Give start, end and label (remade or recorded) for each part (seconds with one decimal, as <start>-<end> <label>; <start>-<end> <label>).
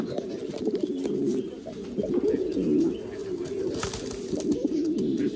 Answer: 0.0-5.4 recorded